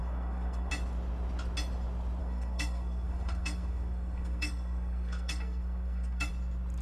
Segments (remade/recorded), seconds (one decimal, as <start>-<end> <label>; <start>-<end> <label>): 0.0-0.7 remade; 0.7-2.2 recorded; 2.2-6.3 remade; 6.3-6.8 recorded